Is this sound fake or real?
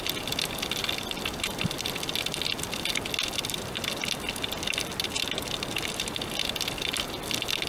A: real